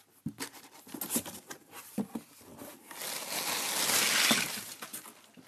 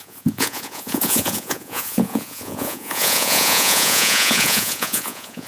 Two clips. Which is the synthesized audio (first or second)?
second